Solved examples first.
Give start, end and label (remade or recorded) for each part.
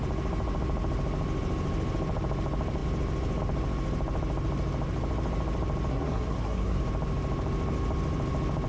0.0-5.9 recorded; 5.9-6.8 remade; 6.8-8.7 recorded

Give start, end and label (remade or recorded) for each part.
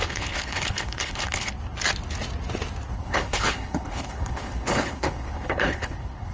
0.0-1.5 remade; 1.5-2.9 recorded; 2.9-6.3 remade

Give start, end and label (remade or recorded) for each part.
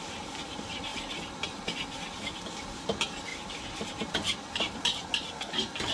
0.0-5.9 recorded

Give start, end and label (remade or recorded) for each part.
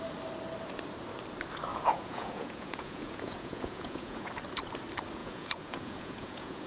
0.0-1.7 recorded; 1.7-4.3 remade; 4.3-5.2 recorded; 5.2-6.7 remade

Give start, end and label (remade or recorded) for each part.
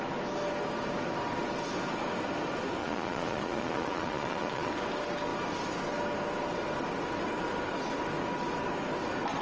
0.0-2.8 recorded; 2.8-4.7 remade; 4.7-9.4 recorded